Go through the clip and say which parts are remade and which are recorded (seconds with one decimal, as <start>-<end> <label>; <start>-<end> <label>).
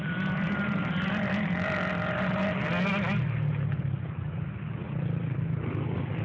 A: 0.0-6.2 recorded